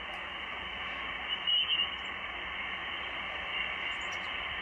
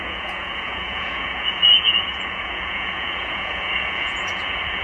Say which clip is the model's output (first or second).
second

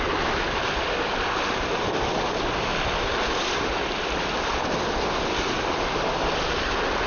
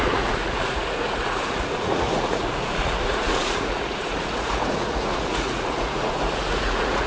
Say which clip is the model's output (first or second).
second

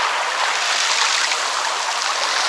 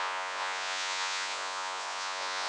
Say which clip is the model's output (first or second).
second